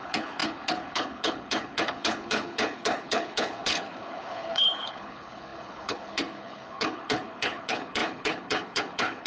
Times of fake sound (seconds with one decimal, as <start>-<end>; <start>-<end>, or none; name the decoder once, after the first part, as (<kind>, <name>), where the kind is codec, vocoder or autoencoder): 0.0-9.3 (codec, HILCodec)